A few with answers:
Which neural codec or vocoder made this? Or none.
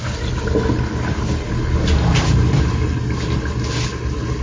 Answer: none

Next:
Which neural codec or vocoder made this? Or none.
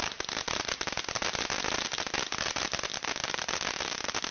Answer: none